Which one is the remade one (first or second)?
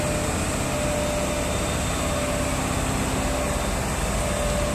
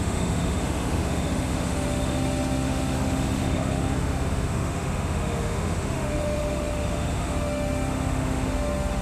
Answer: second